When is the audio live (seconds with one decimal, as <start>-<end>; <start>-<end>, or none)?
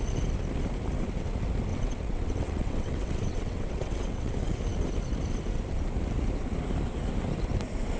0.0-1.7; 4.3-8.0